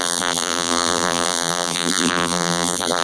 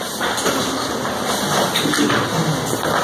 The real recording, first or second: second